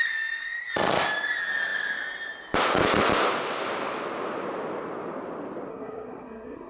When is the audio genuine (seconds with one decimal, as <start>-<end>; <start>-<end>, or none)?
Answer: 0.0-5.7